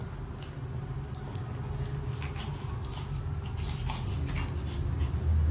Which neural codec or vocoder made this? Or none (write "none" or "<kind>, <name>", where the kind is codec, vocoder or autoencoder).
none